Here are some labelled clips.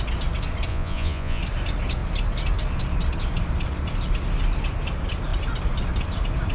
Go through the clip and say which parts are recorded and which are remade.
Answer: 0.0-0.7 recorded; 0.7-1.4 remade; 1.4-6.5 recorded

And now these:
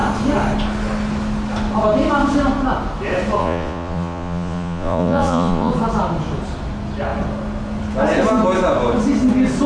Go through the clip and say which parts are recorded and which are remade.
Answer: 0.0-3.4 recorded; 3.4-5.7 remade; 5.7-9.7 recorded

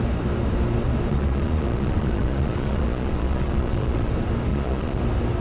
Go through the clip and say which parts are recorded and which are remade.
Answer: 0.0-1.1 recorded; 1.1-4.1 remade; 4.1-4.5 recorded; 4.5-5.0 remade; 5.0-5.4 recorded

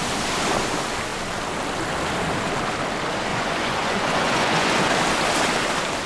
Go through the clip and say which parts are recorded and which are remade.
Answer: 0.0-3.3 recorded; 3.3-4.9 remade; 4.9-6.1 recorded